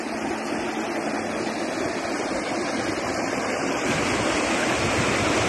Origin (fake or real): real